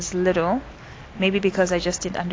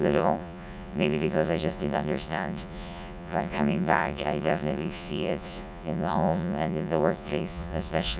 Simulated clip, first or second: second